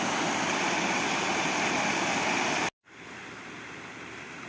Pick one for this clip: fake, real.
real